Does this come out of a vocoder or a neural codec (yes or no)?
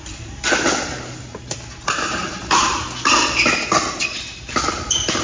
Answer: no